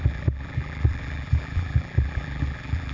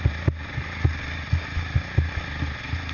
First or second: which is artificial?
first